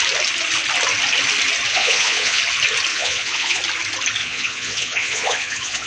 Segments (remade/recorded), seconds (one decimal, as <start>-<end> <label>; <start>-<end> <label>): 0.0-1.7 recorded; 1.7-2.4 remade; 2.4-2.9 recorded; 2.9-3.6 remade; 3.6-4.2 recorded; 4.2-5.9 remade